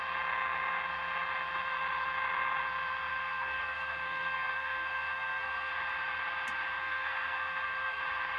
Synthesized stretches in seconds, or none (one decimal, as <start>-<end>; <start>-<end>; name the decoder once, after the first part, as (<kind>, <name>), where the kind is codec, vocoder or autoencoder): 3.1-5.7 (codec, SNAC); 6.8-8.0